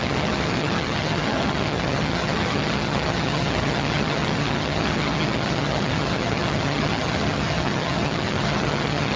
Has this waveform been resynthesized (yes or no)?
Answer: yes